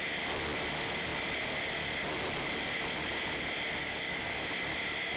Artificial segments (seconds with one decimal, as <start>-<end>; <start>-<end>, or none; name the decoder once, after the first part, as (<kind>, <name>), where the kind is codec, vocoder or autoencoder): 3.8-4.5 (codec, DAC)